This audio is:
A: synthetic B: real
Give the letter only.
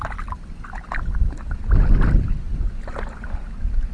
B